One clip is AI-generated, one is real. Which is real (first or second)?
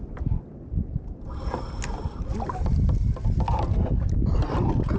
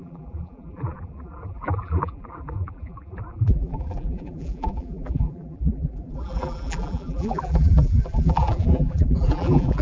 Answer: first